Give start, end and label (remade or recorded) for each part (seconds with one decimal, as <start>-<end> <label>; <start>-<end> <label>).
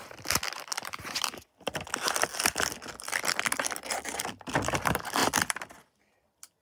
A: 0.0-6.6 recorded